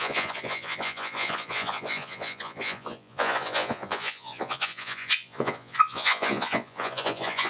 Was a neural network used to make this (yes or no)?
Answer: yes